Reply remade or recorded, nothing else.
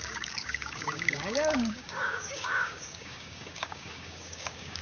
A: remade